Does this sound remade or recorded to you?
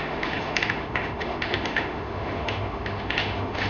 remade